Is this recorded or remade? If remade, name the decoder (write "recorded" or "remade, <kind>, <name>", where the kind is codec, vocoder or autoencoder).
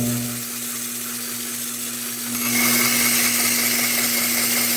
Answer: recorded